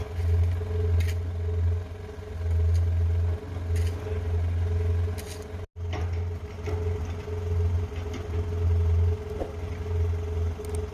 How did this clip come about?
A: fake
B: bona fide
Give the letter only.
B